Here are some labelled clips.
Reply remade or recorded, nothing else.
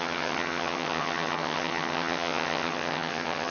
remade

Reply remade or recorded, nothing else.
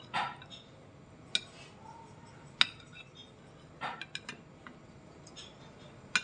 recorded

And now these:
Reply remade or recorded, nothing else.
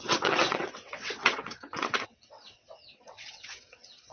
remade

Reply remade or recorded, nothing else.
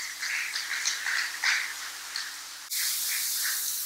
recorded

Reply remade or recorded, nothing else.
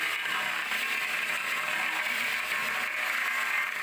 recorded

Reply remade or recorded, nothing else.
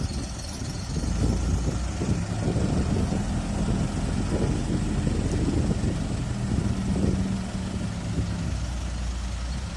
recorded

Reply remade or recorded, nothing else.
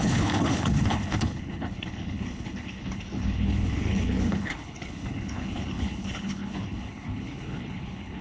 remade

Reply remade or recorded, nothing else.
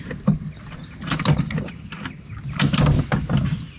recorded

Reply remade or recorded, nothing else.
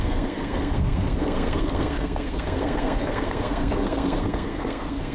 remade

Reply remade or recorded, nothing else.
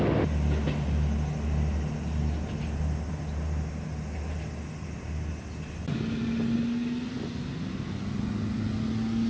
recorded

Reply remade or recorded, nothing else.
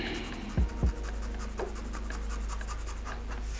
recorded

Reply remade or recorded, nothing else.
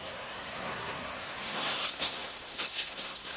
remade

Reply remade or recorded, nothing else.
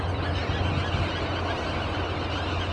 recorded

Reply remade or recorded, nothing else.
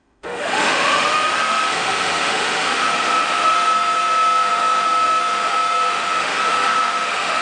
remade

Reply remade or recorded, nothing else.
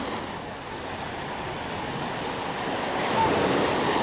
recorded